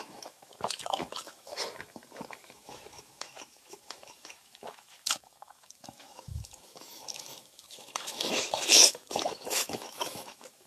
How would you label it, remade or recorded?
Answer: remade